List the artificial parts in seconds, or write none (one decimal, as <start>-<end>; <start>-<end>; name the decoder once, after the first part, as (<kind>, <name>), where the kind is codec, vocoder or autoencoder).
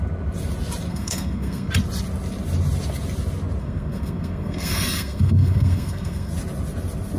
0.9-1.7 (codec, SNAC); 3.6-6.3